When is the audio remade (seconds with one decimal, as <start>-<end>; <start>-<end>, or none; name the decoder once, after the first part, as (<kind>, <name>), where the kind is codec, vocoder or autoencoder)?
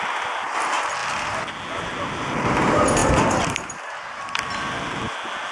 3.0-3.7 (vocoder, BigVGAN v2)